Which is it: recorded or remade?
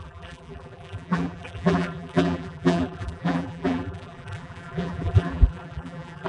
remade